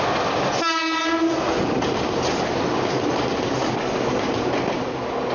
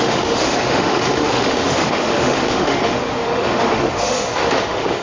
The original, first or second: first